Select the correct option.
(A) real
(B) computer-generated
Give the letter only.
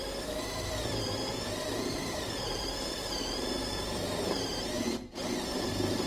B